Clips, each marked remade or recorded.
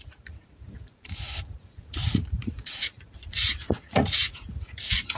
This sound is remade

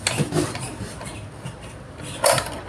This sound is recorded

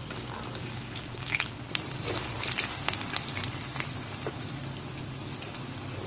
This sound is recorded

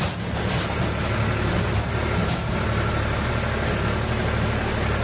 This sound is recorded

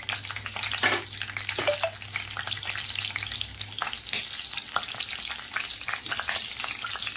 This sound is recorded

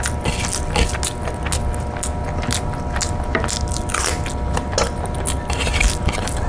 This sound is recorded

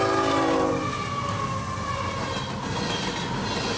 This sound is recorded